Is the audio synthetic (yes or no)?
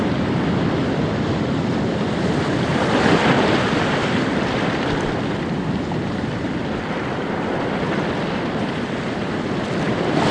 yes